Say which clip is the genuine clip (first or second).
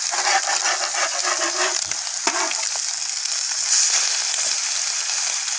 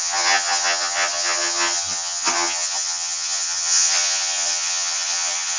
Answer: first